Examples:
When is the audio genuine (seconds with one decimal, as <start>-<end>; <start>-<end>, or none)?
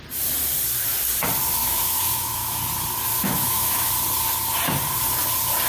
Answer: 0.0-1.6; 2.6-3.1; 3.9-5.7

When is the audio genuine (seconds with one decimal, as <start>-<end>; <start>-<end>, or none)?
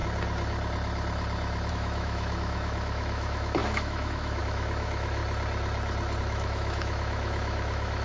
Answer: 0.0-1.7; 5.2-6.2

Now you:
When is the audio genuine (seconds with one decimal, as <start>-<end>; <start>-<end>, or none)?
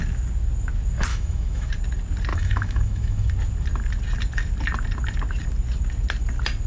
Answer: 0.0-1.1; 1.7-2.3; 3.3-6.7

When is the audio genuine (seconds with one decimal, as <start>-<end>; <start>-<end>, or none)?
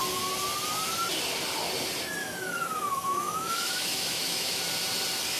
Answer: 0.0-2.2; 4.6-5.4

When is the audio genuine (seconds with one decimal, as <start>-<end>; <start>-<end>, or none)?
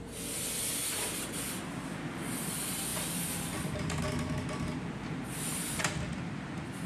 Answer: 0.0-6.9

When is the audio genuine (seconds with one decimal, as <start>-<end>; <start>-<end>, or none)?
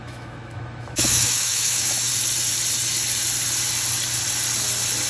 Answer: 2.1-5.1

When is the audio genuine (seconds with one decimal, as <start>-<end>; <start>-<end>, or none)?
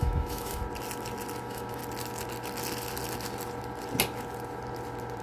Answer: 0.6-1.4; 1.8-5.2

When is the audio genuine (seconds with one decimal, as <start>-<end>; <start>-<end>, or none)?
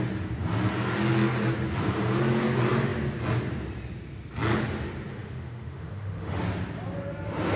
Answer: 0.0-5.1; 6.4-7.6